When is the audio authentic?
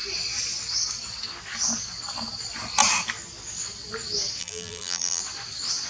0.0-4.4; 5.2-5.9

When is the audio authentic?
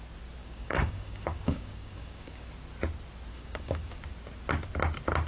0.0-0.4; 2.5-3.3; 4.0-5.3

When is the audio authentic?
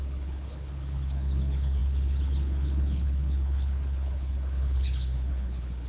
none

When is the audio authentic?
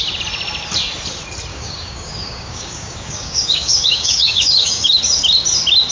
0.0-1.5; 5.0-5.9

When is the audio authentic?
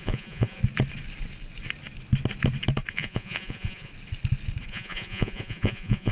0.6-2.9; 3.9-4.7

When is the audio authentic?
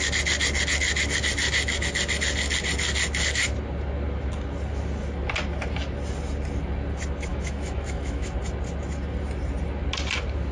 0.0-7.3; 8.3-10.5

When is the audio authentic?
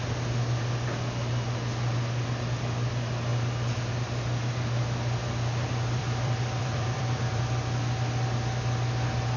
0.0-6.0; 7.4-9.4